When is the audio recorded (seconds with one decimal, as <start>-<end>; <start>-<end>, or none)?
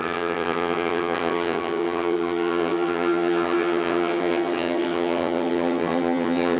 none